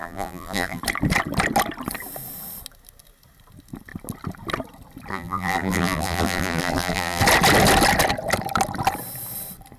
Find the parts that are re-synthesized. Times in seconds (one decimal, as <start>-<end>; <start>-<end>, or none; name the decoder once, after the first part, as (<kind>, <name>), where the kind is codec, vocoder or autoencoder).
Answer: 0.0-0.8 (vocoder, BigVGAN v2); 5.1-7.2